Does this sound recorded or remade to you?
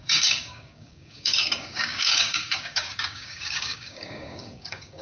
remade